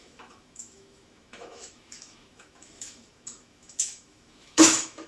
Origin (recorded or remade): remade